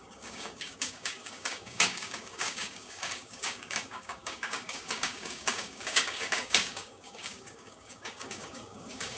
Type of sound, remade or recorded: remade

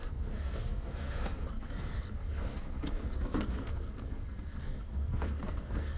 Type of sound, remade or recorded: remade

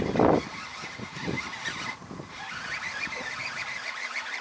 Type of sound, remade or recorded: remade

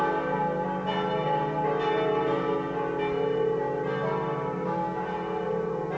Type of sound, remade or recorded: recorded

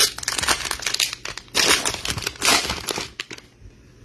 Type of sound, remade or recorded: recorded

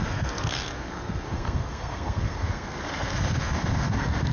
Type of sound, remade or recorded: remade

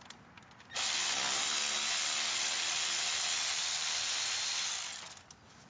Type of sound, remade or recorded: recorded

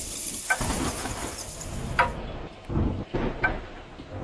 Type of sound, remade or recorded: recorded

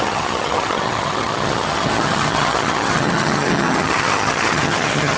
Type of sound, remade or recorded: remade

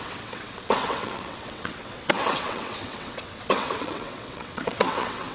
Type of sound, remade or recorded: remade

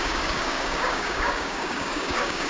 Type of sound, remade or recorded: remade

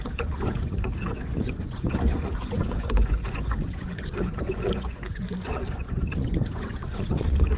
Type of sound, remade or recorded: remade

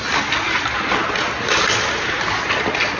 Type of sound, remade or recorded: recorded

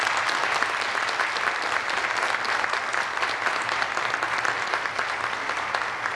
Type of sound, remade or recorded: recorded